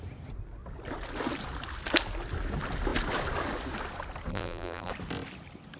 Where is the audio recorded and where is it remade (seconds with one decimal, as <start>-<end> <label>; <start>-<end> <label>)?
0.0-4.3 recorded; 4.3-4.9 remade; 4.9-5.8 recorded